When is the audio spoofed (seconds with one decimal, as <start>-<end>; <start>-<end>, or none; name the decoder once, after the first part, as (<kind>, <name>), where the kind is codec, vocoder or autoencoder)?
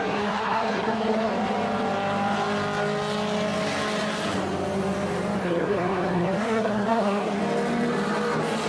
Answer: 0.0-1.3 (codec, SNAC); 5.4-7.4